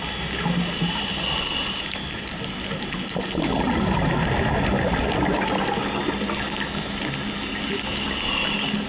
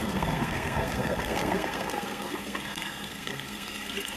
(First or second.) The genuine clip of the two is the first